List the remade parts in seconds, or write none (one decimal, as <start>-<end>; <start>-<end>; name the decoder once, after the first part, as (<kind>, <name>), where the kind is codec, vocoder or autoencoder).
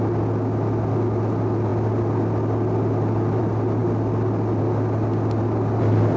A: none